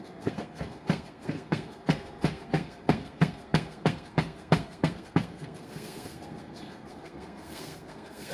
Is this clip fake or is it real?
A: fake